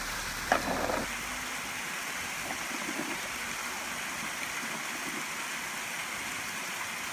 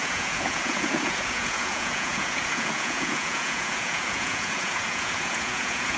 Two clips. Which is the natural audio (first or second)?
first